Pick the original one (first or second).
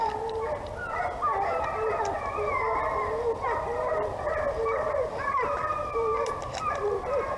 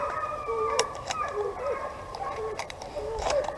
first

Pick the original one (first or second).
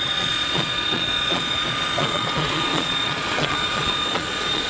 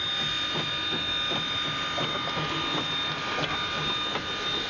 second